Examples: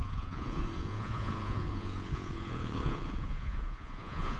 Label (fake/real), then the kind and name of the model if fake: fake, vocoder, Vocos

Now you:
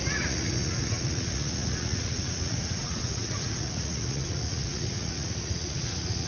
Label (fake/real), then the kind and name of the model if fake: fake, vocoder, Vocos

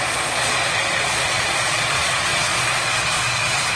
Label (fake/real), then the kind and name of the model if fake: fake, vocoder, Vocos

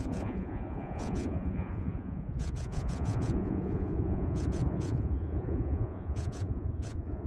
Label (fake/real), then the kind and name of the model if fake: fake, vocoder, Vocos